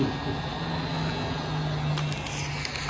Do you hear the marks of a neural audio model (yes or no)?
no